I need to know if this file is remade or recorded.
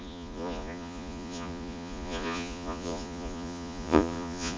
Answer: remade